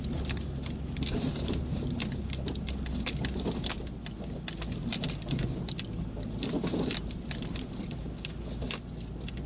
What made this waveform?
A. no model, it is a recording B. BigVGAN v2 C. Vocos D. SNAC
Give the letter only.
A